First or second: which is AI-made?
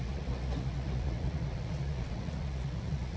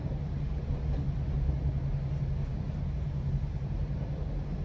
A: first